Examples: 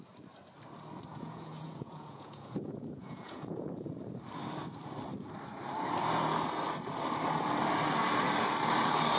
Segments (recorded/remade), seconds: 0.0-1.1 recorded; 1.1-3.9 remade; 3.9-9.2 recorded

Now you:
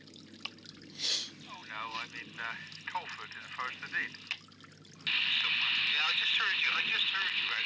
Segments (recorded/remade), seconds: 0.0-7.7 recorded